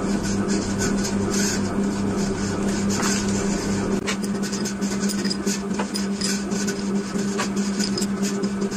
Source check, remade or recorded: recorded